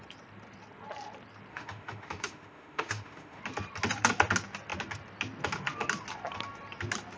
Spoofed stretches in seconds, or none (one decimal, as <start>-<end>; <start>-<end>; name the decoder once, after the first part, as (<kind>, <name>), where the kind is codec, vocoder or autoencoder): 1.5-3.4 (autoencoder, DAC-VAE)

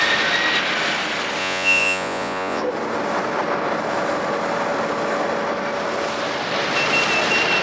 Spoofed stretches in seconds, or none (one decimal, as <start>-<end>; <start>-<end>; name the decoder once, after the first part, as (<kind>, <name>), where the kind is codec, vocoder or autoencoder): 1.4-2.6 (vocoder, Vocos)

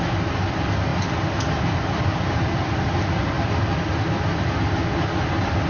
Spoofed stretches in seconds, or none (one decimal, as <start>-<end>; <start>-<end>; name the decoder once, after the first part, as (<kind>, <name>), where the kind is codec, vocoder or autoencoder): 0.9-2.7 (vocoder, BigVGAN v2)